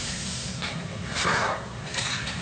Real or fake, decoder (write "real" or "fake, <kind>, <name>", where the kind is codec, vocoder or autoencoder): fake, codec, SNAC